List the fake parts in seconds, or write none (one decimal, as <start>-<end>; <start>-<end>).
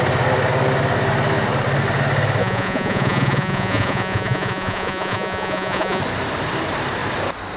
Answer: 2.4-6.0